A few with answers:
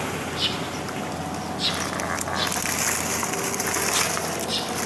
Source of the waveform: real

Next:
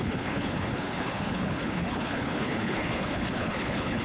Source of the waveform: fake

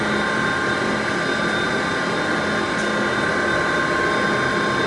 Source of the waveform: real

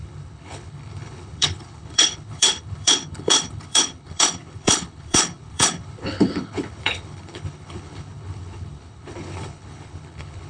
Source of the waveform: fake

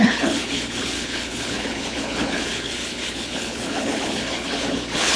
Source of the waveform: fake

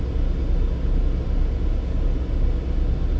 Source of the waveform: real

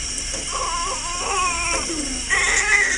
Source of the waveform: real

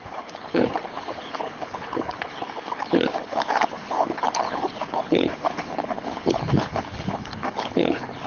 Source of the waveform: fake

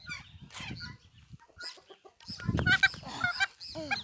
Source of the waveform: real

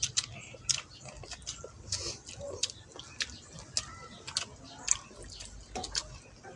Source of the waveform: real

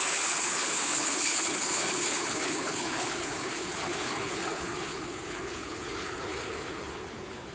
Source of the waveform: fake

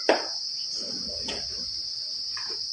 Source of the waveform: real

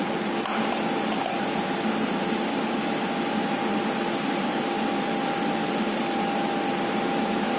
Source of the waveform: real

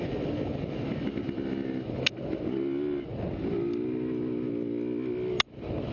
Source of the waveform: real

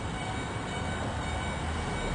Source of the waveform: real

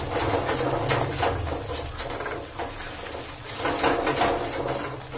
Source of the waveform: real